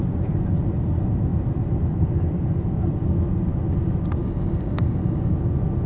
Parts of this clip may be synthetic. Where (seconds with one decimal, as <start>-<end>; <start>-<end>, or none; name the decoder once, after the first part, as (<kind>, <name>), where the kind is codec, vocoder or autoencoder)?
4.2-5.3 (codec, DAC)